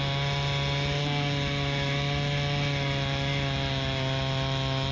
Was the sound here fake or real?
real